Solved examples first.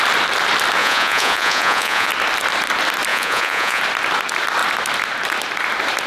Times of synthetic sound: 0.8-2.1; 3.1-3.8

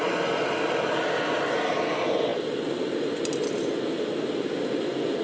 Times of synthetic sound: none